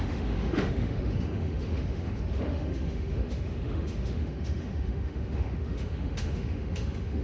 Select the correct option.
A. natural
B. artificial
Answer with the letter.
B